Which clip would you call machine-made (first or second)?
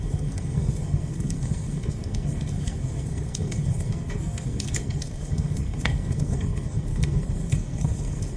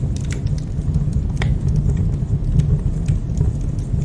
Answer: first